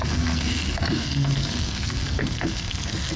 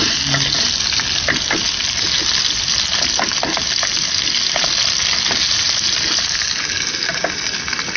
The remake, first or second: first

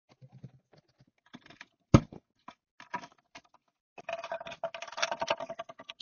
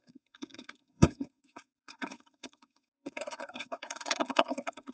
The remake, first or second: second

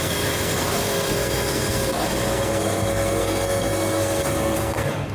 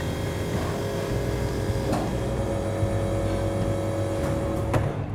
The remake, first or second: first